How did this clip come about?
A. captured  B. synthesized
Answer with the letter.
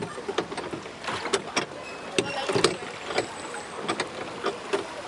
A